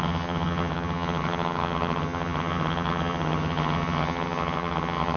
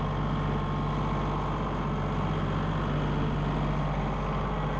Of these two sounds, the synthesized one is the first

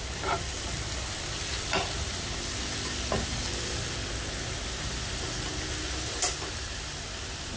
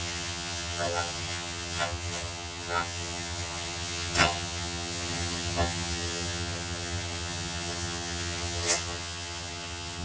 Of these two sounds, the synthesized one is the second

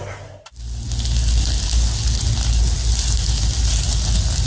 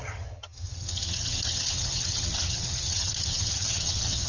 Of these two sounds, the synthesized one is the second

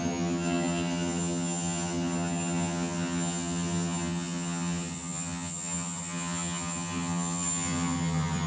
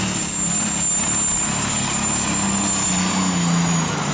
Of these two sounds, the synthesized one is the first